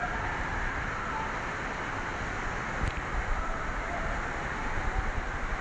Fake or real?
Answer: real